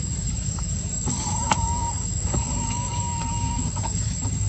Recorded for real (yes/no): no